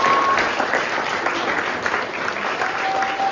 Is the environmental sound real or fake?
real